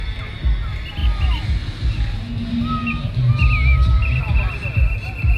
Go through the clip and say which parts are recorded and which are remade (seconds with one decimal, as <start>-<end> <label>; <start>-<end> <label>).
0.0-5.4 recorded